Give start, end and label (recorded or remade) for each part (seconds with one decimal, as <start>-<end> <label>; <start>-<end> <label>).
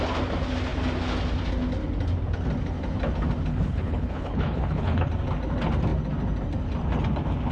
0.0-3.5 recorded; 3.5-5.1 remade; 5.1-7.5 recorded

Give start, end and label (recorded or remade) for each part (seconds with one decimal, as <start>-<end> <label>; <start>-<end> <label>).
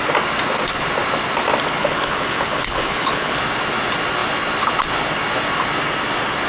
0.0-1.8 recorded; 1.8-3.4 remade; 3.4-6.5 recorded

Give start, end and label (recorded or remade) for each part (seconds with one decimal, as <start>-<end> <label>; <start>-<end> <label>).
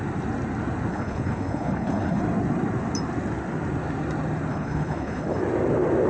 0.0-0.9 recorded; 0.9-2.2 remade; 2.2-4.5 recorded; 4.5-5.4 remade; 5.4-6.1 recorded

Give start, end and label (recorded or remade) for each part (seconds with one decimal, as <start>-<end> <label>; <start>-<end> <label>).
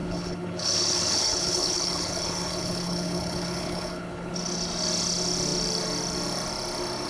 0.0-4.3 remade; 4.3-7.1 recorded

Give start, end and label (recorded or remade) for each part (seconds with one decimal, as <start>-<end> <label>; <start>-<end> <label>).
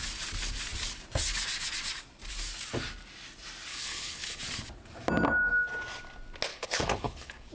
0.0-3.7 recorded; 3.7-4.4 remade; 4.4-6.5 recorded; 6.5-7.5 remade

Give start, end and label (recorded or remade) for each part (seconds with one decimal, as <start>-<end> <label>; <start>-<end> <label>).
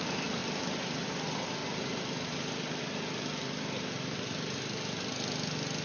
0.0-5.8 recorded